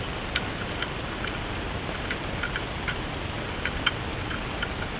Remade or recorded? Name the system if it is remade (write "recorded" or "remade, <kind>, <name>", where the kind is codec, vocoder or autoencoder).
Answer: recorded